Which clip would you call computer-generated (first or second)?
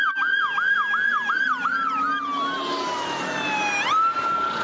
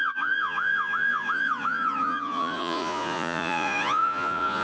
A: second